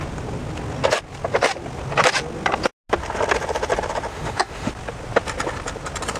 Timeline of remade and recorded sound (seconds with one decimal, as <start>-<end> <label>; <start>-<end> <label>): 0.0-4.1 recorded; 4.1-4.7 remade; 4.7-6.2 recorded